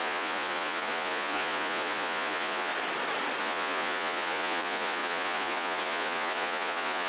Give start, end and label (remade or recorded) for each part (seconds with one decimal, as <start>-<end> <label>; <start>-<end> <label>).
0.0-2.7 remade; 2.7-3.4 recorded; 3.4-7.1 remade

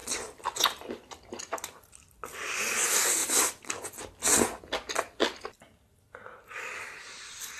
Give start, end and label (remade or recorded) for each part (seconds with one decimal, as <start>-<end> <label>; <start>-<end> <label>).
0.0-7.6 recorded